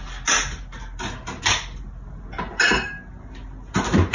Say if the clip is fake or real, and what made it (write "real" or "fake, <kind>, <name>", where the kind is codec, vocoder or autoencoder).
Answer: real